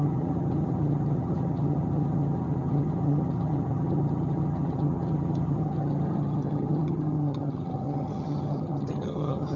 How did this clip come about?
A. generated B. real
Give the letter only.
A